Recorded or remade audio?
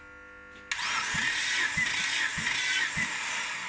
recorded